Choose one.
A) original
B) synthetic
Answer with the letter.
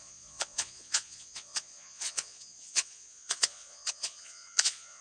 B